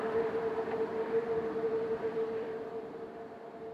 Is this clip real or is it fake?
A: fake